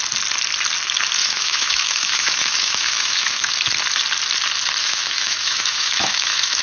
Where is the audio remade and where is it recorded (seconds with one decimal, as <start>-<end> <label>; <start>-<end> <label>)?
0.0-1.2 recorded; 1.2-3.5 remade; 3.5-4.8 recorded; 4.8-6.6 remade